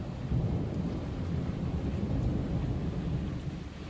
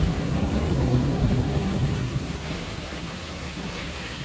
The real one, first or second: first